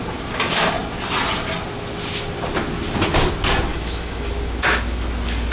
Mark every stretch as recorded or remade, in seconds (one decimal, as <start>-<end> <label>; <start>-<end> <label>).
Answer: 0.0-3.7 recorded; 3.7-4.3 remade; 4.3-5.5 recorded